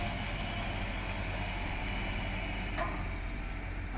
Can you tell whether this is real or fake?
real